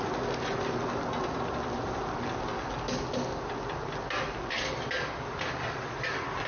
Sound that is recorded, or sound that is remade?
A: recorded